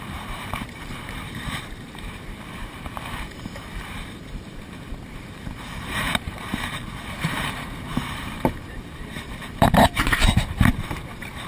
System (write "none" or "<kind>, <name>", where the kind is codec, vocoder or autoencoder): vocoder, BigVGAN v2